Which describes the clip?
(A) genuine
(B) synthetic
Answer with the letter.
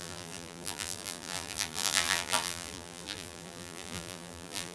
B